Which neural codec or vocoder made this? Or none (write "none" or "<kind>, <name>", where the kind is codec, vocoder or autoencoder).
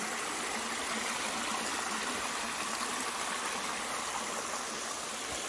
none